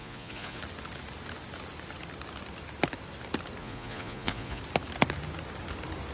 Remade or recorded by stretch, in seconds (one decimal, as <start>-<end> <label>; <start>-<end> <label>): 0.0-0.6 remade; 0.6-3.6 recorded; 3.6-4.6 remade; 4.6-6.1 recorded